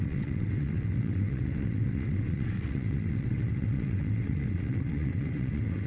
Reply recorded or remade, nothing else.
remade